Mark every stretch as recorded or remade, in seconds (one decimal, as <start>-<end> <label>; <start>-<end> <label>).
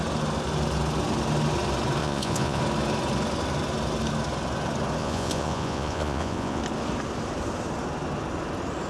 0.0-2.0 recorded; 2.0-2.6 remade; 2.6-5.0 recorded; 5.0-6.6 remade; 6.6-8.9 recorded